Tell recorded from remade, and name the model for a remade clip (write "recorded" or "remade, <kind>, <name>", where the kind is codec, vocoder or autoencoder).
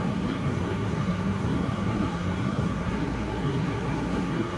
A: remade, codec, SNAC